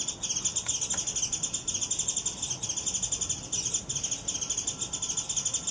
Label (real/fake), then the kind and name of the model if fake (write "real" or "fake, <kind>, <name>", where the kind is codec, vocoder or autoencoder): real